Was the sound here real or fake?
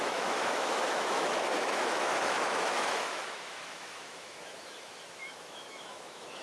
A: fake